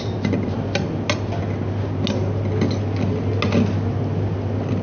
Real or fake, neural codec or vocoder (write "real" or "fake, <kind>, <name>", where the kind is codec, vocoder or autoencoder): real